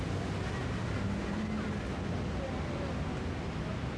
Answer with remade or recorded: recorded